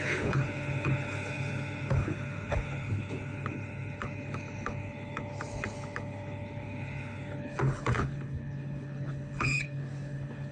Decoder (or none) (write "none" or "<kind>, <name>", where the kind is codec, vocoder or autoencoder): codec, HILCodec